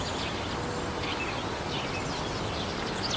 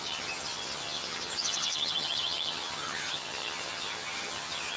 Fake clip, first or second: second